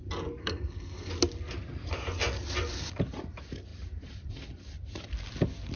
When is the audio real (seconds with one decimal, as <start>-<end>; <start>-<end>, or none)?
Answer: 0.0-0.4; 1.1-5.8